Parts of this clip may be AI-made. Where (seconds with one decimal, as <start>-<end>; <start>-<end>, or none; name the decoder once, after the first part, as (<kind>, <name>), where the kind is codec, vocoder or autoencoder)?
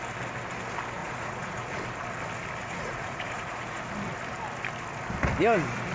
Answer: 1.0-1.8 (vocoder, Vocos); 2.6-3.8